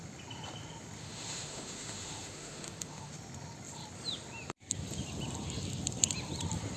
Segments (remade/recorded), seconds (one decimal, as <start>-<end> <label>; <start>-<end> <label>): 0.0-1.0 recorded; 1.0-3.1 remade; 3.1-6.8 recorded